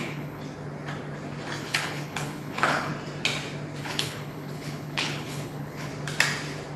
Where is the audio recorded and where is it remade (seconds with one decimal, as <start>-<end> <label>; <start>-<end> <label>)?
0.0-0.4 remade; 0.4-1.6 recorded; 1.6-2.9 remade; 2.9-3.8 recorded; 3.8-5.9 remade; 5.9-6.8 recorded